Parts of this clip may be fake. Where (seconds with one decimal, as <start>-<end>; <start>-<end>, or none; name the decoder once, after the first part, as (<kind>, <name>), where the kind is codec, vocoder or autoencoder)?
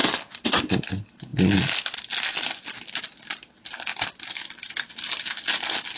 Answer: none